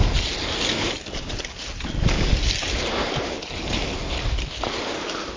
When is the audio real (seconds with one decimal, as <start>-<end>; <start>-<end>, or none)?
0.0-5.4